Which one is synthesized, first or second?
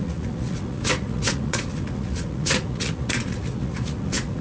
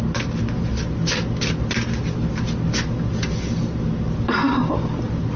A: first